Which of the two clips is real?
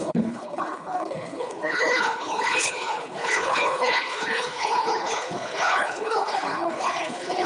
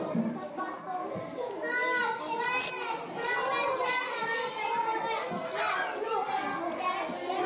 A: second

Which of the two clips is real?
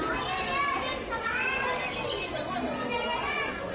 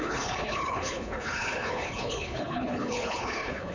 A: first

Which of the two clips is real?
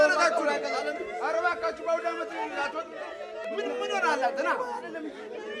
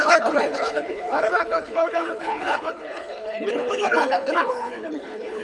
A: first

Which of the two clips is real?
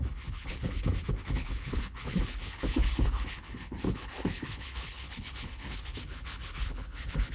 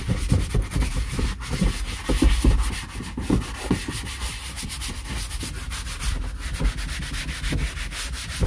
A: second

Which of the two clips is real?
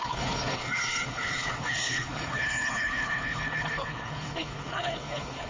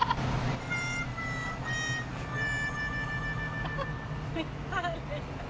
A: second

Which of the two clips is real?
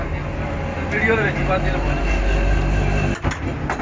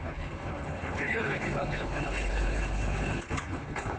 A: first